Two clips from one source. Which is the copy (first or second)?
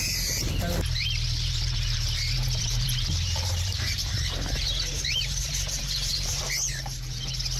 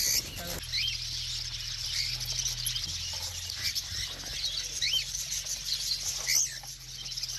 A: first